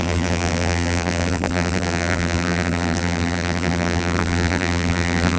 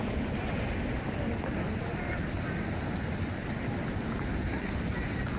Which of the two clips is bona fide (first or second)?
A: second